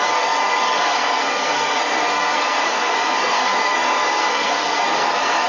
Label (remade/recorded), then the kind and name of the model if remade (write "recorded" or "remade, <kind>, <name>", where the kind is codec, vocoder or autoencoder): remade, codec, SNAC